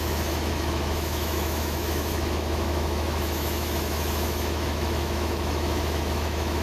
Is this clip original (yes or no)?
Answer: no